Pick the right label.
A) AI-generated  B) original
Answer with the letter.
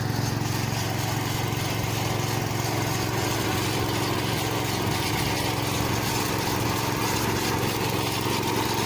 B